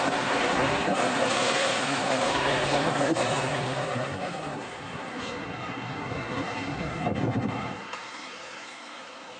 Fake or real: fake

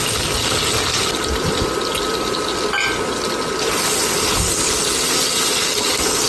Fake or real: real